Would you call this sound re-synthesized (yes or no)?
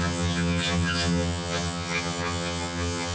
yes